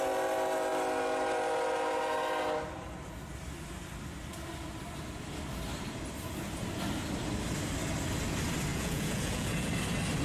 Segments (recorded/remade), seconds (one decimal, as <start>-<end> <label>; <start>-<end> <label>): 0.0-8.7 recorded; 8.7-9.7 remade; 9.7-10.2 recorded